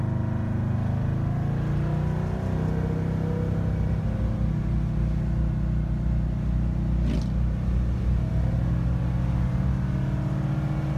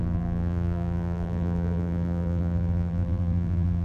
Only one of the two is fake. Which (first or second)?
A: second